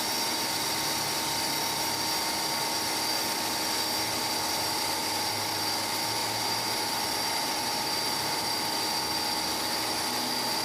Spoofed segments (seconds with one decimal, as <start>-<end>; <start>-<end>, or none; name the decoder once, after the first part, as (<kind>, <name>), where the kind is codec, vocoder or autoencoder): 6.2-8.6 (vocoder, BigVGAN v2)